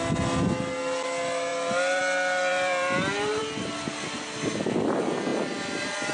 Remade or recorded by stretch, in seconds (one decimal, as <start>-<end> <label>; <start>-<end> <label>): 0.0-2.5 recorded; 2.5-3.4 remade; 3.4-5.3 recorded; 5.3-6.1 remade